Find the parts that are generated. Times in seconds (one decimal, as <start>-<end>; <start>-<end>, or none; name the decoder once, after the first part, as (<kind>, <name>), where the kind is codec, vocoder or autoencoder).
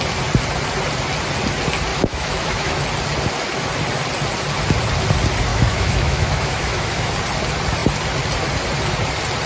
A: 1.9-2.8 (autoencoder, DAC-VAE); 5.5-7.1